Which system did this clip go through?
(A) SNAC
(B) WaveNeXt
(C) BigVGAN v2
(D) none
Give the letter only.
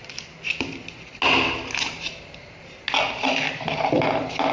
D